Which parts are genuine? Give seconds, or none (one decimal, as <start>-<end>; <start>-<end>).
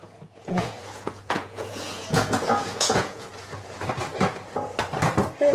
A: 3.3-5.5